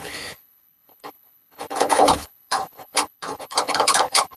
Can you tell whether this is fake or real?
fake